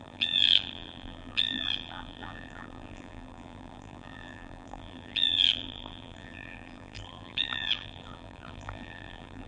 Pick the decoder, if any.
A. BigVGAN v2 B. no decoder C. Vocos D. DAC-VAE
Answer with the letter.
A